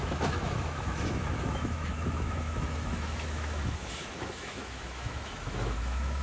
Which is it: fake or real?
fake